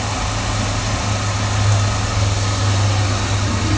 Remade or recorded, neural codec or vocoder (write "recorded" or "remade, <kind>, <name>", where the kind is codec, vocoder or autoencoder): recorded